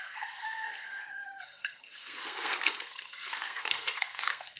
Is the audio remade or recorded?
remade